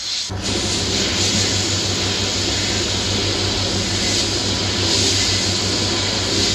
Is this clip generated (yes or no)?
no